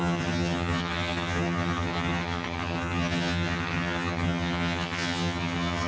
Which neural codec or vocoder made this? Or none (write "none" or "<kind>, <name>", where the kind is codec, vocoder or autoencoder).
vocoder, HiFi-GAN